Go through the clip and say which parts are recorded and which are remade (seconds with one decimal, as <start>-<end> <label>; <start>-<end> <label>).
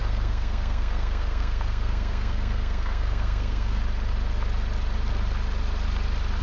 0.0-3.8 remade; 3.8-6.4 recorded